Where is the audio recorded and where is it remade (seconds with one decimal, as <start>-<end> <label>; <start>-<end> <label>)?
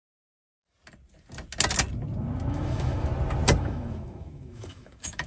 0.0-2.5 recorded; 2.5-3.1 remade; 3.1-3.6 recorded; 3.6-5.3 remade